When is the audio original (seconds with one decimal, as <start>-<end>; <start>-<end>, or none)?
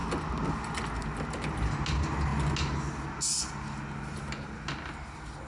0.0-5.5